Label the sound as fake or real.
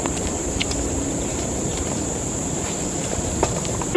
fake